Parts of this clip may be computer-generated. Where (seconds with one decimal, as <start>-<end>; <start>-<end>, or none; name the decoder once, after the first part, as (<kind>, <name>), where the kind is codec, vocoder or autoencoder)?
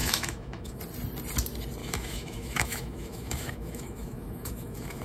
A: 0.0-0.8 (autoencoder, DAC-VAE); 1.8-5.0